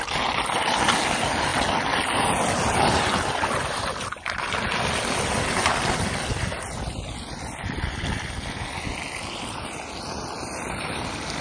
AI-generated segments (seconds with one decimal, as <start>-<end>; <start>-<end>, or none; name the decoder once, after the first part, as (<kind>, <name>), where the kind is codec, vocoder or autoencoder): none